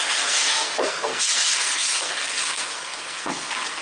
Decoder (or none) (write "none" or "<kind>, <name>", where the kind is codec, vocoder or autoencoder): codec, SNAC